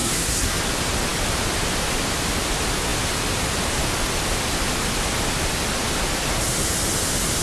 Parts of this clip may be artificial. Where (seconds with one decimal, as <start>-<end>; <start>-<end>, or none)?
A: 0.0-0.6